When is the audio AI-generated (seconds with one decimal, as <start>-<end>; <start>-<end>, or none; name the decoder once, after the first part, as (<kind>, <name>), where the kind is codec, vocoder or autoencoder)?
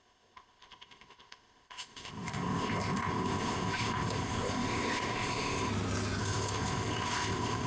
0.0-5.7 (codec, ZipCodec); 6.2-7.7